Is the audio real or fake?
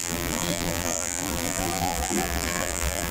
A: fake